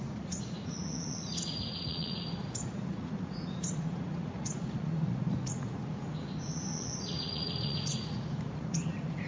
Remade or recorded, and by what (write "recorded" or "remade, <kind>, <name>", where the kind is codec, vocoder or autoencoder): remade, vocoder, Vocos